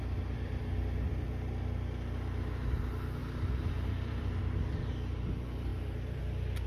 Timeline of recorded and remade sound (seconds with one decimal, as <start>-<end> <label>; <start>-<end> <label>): 0.0-3.2 recorded; 3.2-4.4 remade; 4.4-5.7 recorded; 5.7-6.2 remade; 6.2-6.7 recorded